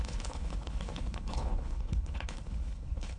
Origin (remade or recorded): remade